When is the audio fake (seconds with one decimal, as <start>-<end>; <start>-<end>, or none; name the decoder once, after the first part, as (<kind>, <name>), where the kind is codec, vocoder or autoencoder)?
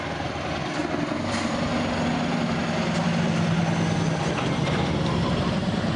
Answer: 0.0-0.8 (vocoder, BigVGAN v2); 3.0-3.6; 4.2-6.0